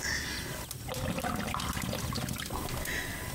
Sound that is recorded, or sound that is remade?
recorded